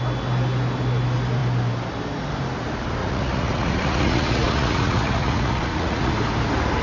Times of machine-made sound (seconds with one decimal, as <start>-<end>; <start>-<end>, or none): 3.0-6.1